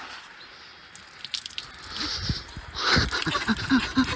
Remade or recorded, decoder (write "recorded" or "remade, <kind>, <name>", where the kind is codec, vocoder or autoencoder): recorded